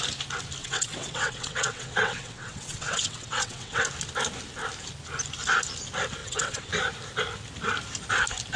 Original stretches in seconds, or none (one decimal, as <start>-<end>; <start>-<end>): 0.0-0.6; 3.8-6.2; 6.7-8.6

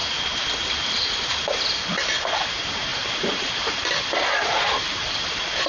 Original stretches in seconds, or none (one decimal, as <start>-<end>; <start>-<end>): 0.0-5.7

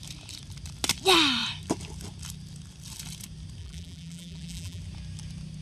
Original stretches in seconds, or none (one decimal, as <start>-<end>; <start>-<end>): 0.0-3.6; 4.8-5.6

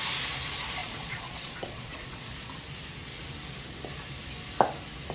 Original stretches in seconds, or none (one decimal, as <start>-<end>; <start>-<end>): 0.0-0.8; 2.3-5.1

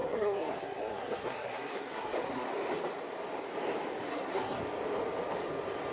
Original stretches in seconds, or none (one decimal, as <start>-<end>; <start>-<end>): 2.5-4.1; 4.6-5.9

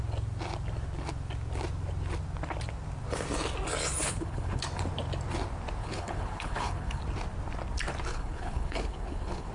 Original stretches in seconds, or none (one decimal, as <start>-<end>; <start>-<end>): 0.0-4.0; 4.6-5.8; 7.0-8.1